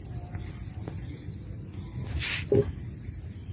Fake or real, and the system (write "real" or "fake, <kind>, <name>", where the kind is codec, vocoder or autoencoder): real